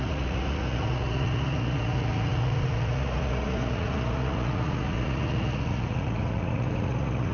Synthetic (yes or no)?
yes